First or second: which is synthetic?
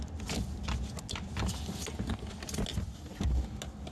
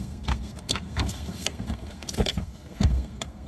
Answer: second